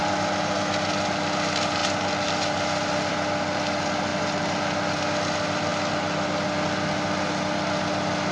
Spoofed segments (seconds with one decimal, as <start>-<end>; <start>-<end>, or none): none